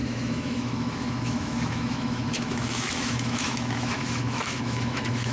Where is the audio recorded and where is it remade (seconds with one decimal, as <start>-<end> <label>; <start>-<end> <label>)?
0.0-5.3 remade